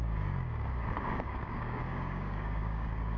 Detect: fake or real fake